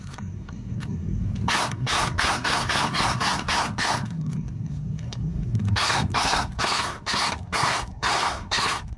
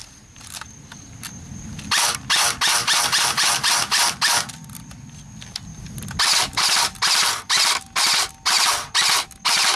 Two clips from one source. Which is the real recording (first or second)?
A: second